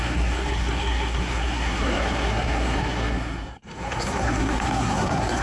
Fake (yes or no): yes